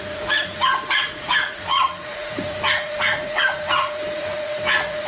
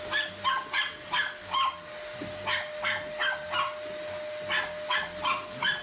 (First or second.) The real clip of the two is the second